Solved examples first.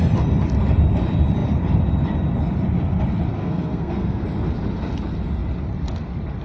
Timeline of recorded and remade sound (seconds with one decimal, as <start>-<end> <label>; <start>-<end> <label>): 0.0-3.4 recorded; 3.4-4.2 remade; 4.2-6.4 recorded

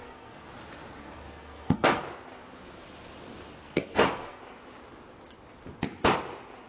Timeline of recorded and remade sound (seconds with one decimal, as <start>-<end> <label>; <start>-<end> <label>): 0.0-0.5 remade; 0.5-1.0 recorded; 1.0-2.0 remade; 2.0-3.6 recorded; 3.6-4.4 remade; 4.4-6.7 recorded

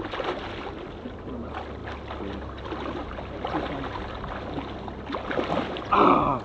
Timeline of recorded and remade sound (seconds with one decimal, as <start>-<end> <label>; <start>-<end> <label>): 0.0-6.4 recorded

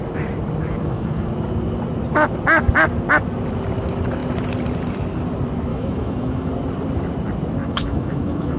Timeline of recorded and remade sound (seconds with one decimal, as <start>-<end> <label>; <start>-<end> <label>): 0.0-0.6 recorded; 0.6-1.3 remade; 1.3-5.7 recorded; 5.7-6.5 remade; 6.5-7.6 recorded; 7.6-8.6 remade

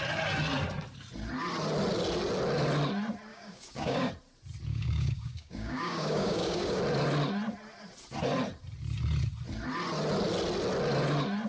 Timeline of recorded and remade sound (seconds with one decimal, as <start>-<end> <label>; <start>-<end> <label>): 0.0-3.3 recorded; 3.3-4.1 remade; 4.1-4.7 recorded; 4.7-6.8 remade; 6.8-11.5 recorded